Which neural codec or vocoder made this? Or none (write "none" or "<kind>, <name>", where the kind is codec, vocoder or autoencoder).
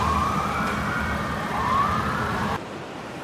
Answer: vocoder, BigVGAN v2